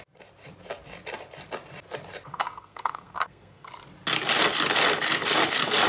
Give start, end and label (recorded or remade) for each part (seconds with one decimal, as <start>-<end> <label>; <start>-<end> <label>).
0.0-2.3 recorded; 2.3-3.7 remade; 3.7-5.9 recorded

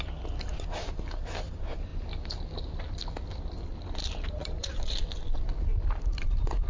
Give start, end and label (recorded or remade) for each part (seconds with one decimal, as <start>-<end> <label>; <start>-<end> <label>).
0.0-4.0 recorded; 4.0-4.8 remade; 4.8-5.7 recorded; 5.7-6.7 remade

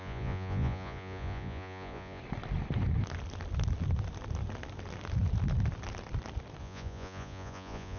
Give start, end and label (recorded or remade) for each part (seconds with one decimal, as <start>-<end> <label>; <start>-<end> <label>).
0.0-2.2 remade; 2.2-6.6 recorded; 6.6-8.0 remade

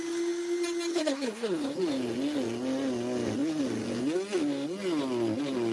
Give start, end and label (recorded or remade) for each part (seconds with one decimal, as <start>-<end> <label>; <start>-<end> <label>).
0.0-0.9 recorded; 0.9-1.8 remade; 1.8-5.7 recorded

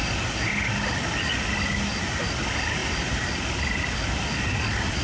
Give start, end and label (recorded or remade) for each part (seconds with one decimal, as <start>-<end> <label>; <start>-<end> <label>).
0.0-0.5 remade; 0.5-2.8 recorded; 2.8-5.0 remade

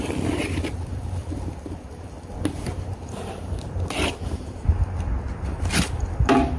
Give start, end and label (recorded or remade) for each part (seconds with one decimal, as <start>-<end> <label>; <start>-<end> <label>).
0.0-6.6 recorded

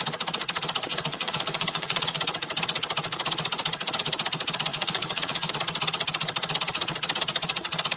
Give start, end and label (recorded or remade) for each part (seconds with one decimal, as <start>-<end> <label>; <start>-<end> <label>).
0.0-0.9 recorded; 0.9-2.2 remade; 2.2-4.7 recorded; 4.7-5.5 remade; 5.5-8.0 recorded

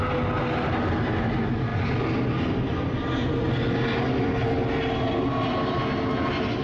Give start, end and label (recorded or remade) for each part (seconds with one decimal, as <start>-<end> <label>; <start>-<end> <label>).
0.0-6.6 recorded